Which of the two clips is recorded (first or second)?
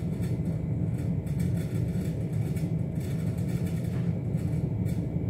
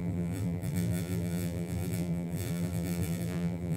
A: first